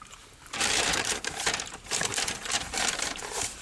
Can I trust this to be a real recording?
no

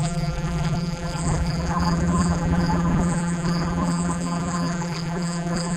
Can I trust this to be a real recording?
no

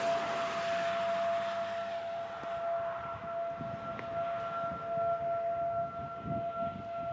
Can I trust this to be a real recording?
yes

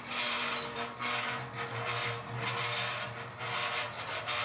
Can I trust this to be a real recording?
yes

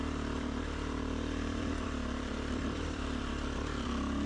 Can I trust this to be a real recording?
no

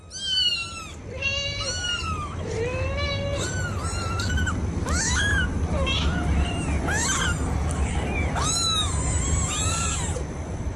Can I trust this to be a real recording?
yes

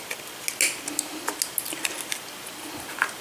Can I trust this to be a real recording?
yes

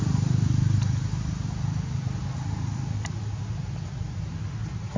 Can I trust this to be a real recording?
yes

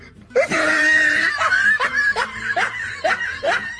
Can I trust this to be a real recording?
no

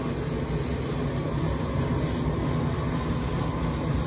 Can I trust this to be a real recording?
yes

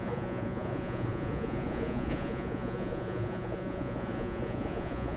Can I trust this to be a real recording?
no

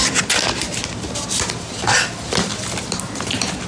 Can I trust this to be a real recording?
yes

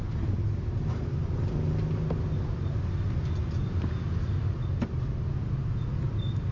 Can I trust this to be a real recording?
yes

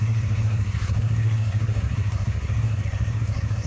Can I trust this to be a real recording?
no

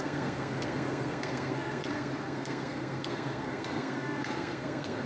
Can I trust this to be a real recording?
no